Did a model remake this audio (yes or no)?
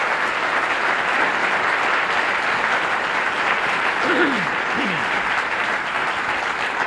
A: no